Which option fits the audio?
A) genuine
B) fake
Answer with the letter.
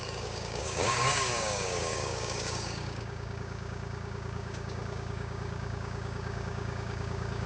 B